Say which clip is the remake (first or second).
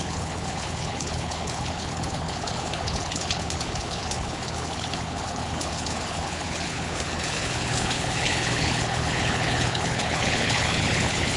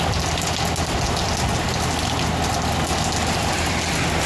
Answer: first